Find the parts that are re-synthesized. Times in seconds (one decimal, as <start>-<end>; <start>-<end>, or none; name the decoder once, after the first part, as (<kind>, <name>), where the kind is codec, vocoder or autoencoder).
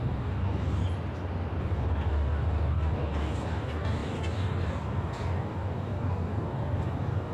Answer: 0.0-0.8 (codec, DAC); 1.6-7.3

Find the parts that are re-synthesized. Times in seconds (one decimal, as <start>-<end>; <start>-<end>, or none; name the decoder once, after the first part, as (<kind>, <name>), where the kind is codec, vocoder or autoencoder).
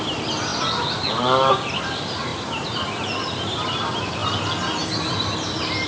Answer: 2.3-2.9 (vocoder, BigVGAN v2)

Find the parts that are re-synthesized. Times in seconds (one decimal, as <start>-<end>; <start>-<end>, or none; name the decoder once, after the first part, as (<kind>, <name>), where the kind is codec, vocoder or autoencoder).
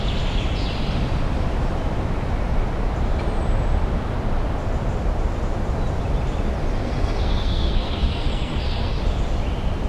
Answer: 6.8-9.0 (codec, SNAC)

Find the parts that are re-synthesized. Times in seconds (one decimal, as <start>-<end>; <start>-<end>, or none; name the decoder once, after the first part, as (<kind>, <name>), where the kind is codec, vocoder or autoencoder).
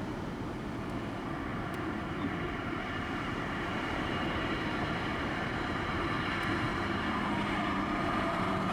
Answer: 1.5-6.3 (vocoder, BigVGAN v2); 6.7-8.7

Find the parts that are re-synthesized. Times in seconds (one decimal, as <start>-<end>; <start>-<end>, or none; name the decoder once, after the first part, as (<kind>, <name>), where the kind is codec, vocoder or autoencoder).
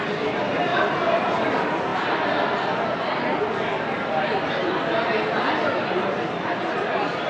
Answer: none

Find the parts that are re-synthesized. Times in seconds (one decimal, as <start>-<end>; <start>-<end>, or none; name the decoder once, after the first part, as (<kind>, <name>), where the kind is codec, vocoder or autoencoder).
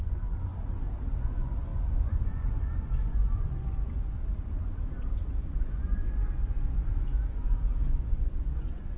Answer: 0.0-0.5 (vocoder, Vocos); 1.2-4.2; 5.4-9.0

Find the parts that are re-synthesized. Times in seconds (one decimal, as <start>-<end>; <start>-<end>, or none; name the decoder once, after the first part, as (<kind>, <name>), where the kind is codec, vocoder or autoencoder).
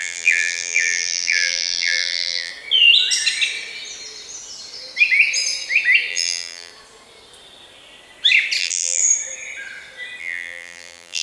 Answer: 0.0-2.5 (vocoder, BigVGAN v2); 6.1-6.7; 8.6-9.0; 10.2-11.2